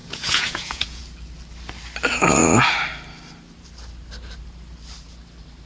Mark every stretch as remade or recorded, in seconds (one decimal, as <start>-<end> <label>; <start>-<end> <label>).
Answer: 0.0-1.0 remade; 1.0-5.7 recorded